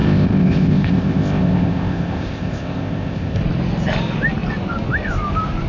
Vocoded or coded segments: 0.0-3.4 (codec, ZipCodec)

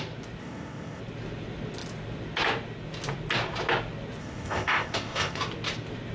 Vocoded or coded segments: 0.4-1.0 (codec, ZipCodec); 4.2-5.4

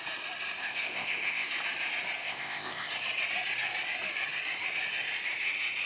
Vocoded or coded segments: 0.6-1.5 (codec, ZipCodec); 2.2-2.9

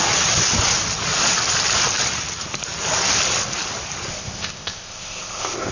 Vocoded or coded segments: 4.1-5.7 (codec, ZipCodec)